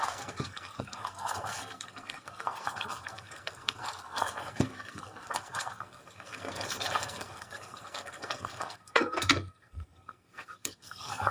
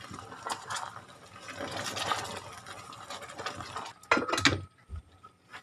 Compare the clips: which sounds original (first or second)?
second